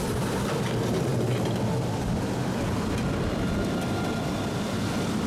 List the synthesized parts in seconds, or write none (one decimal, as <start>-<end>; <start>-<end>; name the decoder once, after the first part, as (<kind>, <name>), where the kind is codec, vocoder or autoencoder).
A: none